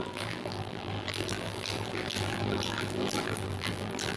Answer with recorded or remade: remade